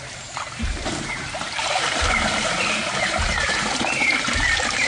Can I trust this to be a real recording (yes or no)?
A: no